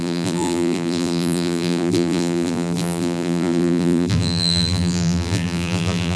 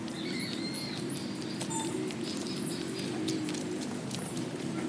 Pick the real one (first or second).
second